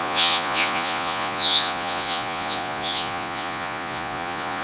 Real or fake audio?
fake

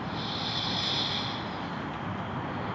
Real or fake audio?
real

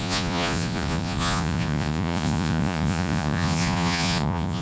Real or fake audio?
fake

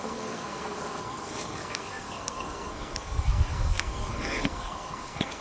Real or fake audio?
fake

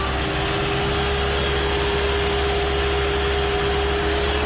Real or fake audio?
real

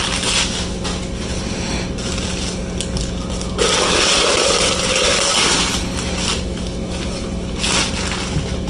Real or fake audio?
real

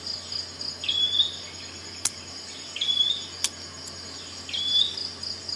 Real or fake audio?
real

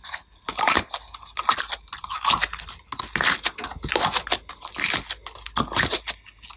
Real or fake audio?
real